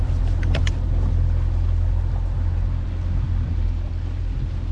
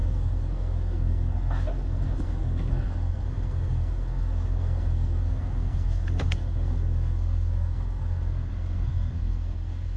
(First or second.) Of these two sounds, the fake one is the second